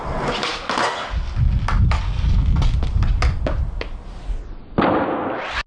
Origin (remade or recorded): recorded